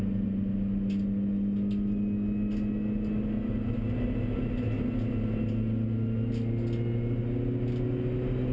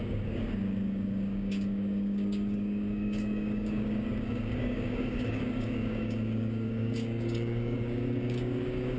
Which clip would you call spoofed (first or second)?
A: second